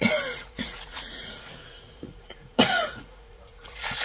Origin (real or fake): fake